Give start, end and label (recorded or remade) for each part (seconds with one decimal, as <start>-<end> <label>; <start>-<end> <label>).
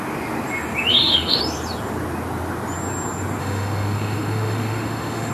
0.0-0.9 recorded; 0.9-1.4 remade; 1.4-3.4 recorded; 3.4-5.3 remade